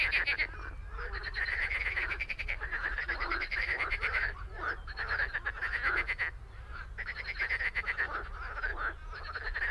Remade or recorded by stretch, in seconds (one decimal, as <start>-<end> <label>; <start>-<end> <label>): 0.0-1.2 recorded; 1.2-5.2 remade; 5.2-6.4 recorded; 6.4-7.2 remade; 7.2-9.7 recorded